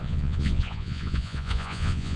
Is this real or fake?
fake